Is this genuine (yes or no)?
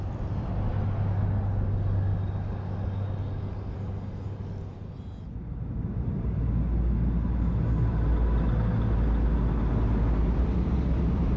yes